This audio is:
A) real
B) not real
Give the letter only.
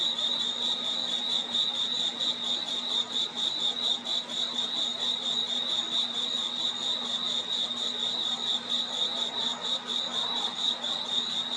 B